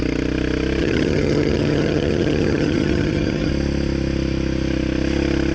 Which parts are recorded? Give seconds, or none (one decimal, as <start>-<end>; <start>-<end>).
0.0-0.8; 3.5-5.5

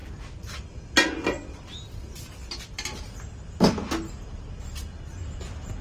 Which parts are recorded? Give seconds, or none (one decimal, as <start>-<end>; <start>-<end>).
0.0-5.8

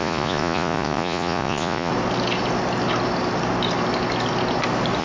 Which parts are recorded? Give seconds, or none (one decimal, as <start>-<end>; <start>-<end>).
1.9-5.0

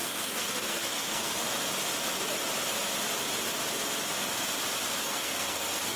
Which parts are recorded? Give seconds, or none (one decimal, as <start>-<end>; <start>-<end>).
1.4-5.0

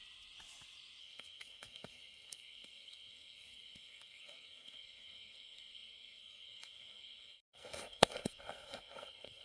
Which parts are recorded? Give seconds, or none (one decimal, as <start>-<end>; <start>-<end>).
0.0-1.0

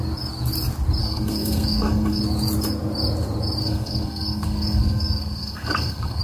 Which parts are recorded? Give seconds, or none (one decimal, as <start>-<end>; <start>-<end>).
0.0-1.0; 2.2-3.6

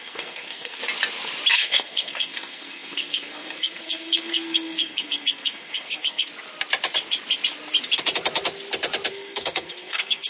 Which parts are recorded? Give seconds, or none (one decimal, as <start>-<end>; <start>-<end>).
0.8-1.5; 6.3-9.1

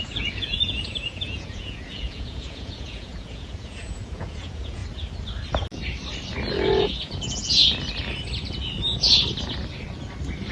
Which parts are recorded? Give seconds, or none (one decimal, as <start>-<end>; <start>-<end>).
4.8-6.8; 7.6-10.5